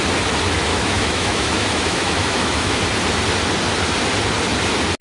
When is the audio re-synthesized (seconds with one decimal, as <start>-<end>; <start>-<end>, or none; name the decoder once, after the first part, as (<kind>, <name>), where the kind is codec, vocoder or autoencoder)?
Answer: 0.7-2.8 (autoencoder, DAC-VAE)